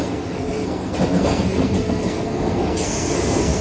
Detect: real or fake fake